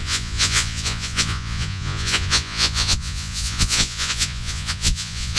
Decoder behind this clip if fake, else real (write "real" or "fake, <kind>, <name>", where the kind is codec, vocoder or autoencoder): fake, vocoder, Vocos